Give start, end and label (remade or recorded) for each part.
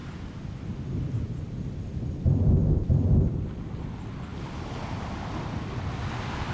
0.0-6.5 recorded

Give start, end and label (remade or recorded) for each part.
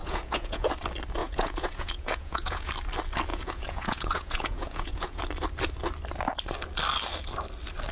0.0-0.7 remade; 0.7-1.2 recorded; 1.2-2.7 remade; 2.7-3.3 recorded; 3.3-5.2 remade; 5.2-7.9 recorded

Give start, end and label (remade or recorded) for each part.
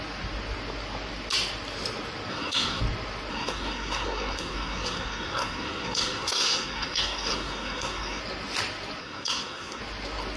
0.0-2.3 recorded; 2.3-2.8 remade; 2.8-3.3 recorded; 3.3-8.2 remade; 8.2-9.0 recorded; 9.0-9.8 remade; 9.8-10.4 recorded